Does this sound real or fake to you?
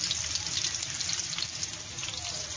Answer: real